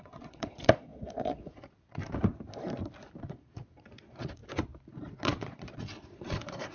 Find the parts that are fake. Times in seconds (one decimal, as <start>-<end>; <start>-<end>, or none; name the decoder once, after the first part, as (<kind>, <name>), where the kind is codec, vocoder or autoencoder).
0.0-2.0 (vocoder, Vocos); 3.2-4.4; 4.9-6.7